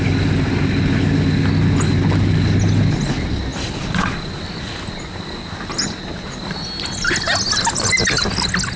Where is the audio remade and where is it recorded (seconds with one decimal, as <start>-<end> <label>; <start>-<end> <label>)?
0.0-8.8 recorded